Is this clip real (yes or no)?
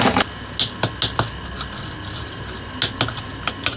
yes